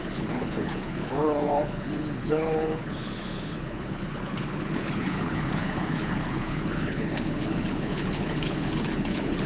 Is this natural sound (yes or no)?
no